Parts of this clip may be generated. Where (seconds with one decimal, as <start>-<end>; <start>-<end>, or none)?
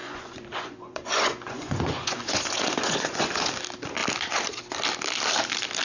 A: 0.0-3.5